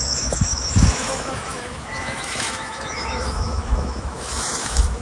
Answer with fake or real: fake